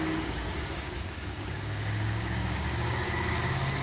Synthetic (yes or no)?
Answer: yes